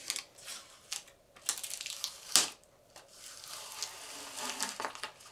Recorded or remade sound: recorded